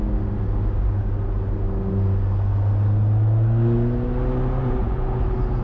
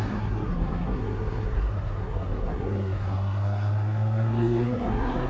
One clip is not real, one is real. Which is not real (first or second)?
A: second